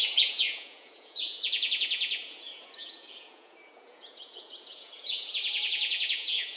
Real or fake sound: fake